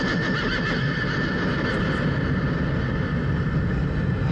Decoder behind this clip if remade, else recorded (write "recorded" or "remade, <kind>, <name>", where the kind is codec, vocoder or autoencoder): recorded